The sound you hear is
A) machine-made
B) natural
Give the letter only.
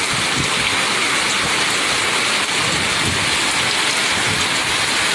B